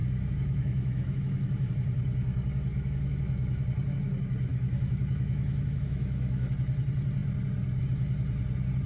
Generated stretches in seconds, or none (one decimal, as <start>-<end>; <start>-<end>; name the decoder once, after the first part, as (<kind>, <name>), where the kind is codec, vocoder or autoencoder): 0.0-1.7 (autoencoder, DAC-VAE); 2.7-3.6; 4.5-6.5